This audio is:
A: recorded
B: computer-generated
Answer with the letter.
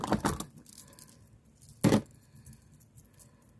A